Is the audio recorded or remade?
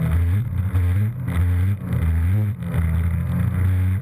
recorded